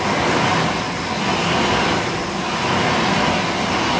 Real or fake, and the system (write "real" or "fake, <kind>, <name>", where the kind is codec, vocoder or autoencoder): real